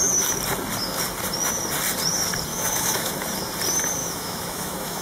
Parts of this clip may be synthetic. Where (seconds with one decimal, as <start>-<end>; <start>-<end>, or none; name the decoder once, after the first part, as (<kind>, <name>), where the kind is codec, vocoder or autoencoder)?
2.5-3.1 (autoencoder, DAC-VAE); 4.0-5.0